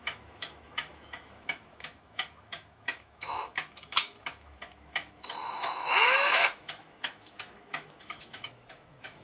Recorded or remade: remade